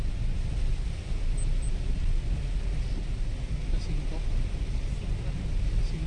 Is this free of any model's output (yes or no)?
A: yes